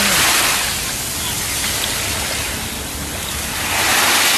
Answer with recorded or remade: recorded